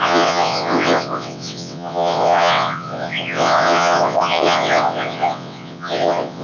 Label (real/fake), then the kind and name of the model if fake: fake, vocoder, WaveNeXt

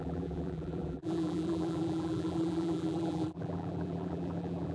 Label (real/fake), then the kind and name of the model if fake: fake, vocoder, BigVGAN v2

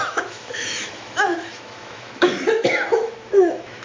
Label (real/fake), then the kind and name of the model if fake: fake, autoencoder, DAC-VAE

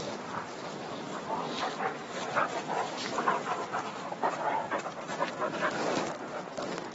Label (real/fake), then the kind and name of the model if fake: real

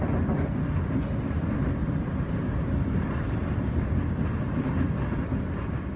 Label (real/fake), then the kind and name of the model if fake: real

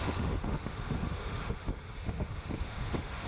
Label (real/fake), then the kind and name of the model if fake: fake, autoencoder, DAC-VAE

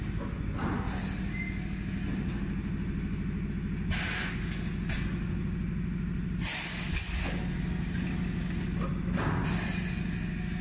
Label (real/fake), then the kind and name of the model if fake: real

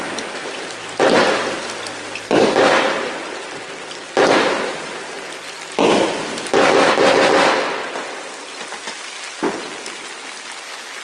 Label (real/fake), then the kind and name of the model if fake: real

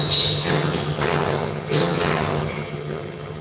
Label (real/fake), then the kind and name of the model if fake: fake, vocoder, HiFi-GAN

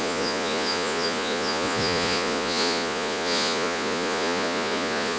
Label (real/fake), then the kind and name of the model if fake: fake, vocoder, Vocos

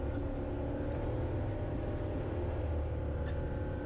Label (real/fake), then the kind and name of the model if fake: real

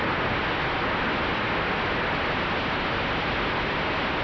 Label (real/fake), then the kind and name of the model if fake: real